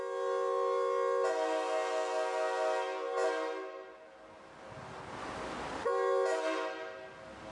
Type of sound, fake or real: real